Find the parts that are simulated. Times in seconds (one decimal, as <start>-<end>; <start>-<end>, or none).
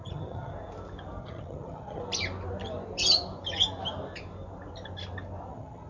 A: 0.0-0.5; 1.2-2.0; 5.5-5.9